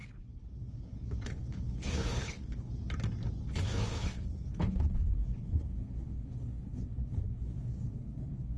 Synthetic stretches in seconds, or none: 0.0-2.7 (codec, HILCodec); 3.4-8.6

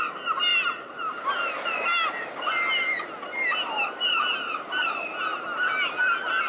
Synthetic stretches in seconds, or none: none

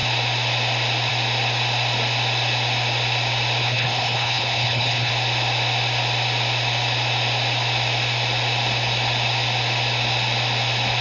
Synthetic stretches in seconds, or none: 3.6-5.1 (codec, HILCodec)